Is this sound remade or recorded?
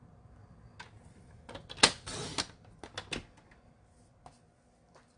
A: recorded